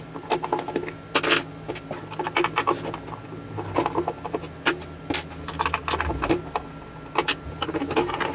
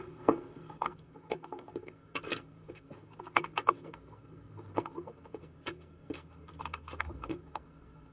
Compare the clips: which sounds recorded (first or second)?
first